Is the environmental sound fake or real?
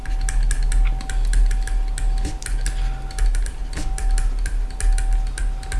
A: real